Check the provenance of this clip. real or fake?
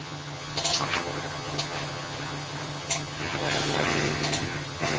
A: fake